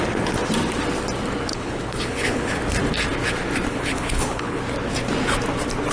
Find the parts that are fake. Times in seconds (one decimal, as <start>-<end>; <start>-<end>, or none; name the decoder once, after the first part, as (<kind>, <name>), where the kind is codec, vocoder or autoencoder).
1.5-2.6 (codec, HILCodec); 3.7-4.6